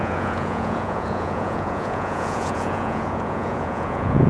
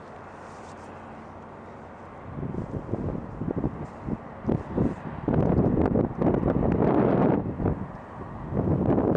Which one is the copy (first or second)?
first